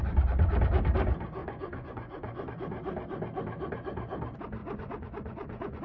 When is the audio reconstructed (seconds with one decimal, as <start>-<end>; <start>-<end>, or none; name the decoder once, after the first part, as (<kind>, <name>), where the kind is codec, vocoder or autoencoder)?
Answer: 1.4-2.5 (vocoder, Vocos); 4.6-5.8